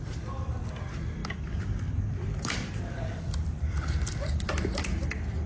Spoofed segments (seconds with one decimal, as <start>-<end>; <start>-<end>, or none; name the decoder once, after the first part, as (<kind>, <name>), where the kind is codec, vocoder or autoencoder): 1.2-4.5 (vocoder, BigVGAN v2)